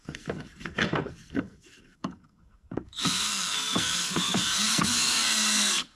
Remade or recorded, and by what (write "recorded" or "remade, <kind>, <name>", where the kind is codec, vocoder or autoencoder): remade, codec, SNAC